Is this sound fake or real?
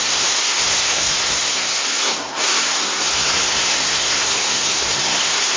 fake